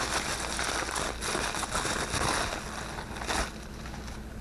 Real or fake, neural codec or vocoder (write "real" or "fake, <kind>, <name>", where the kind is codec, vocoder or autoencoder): real